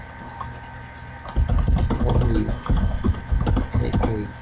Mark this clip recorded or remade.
recorded